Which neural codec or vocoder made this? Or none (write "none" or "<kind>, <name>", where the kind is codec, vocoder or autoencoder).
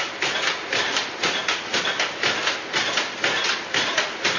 none